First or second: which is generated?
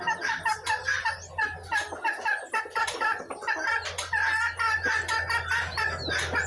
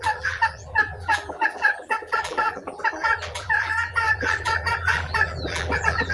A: second